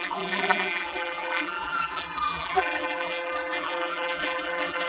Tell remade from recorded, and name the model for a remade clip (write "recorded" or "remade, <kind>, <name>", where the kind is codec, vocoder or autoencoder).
remade, vocoder, BigVGAN v2